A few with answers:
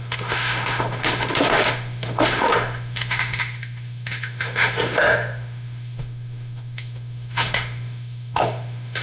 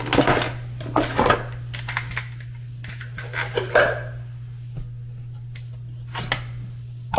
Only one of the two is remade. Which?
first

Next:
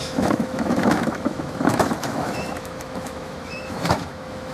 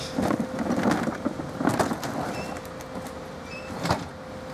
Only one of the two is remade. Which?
first